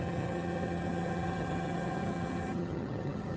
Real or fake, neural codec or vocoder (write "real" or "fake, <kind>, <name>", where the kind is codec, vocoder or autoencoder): fake, vocoder, HiFi-GAN